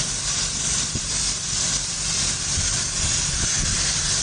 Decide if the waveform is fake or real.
real